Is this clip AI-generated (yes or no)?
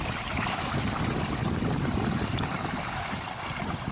no